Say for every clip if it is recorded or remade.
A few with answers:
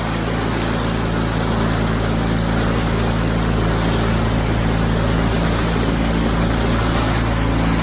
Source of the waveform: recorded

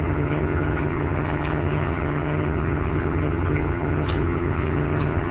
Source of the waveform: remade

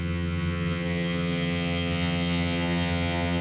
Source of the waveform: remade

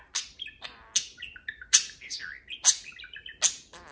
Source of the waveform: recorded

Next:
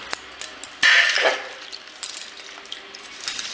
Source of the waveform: recorded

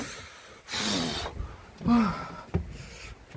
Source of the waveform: recorded